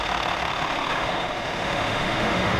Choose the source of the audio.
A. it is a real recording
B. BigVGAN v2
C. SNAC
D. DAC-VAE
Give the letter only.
D